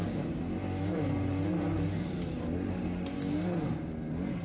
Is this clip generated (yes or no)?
no